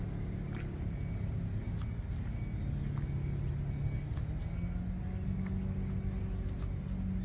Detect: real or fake real